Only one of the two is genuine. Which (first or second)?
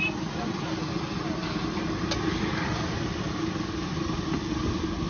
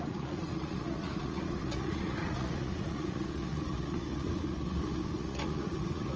first